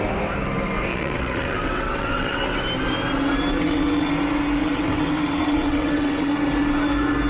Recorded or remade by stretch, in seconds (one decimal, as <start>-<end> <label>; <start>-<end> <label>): 0.0-0.9 recorded; 0.9-2.6 remade; 2.6-3.5 recorded; 3.5-4.1 remade; 4.1-4.6 recorded; 4.6-6.3 remade; 6.3-7.3 recorded